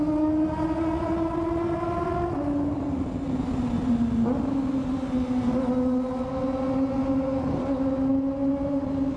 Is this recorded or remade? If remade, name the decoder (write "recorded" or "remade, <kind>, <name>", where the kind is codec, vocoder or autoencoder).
recorded